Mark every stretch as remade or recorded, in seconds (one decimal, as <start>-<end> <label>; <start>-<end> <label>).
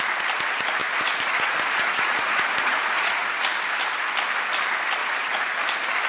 0.0-0.8 recorded; 0.8-3.4 remade; 3.4-5.0 recorded; 5.0-5.6 remade; 5.6-6.1 recorded